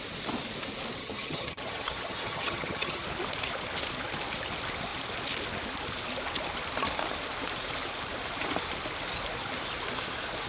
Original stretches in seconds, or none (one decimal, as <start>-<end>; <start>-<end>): 0.0-1.0; 3.0-10.5